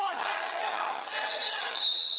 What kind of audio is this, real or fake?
fake